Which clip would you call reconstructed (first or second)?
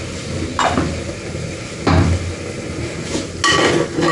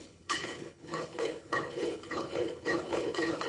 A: second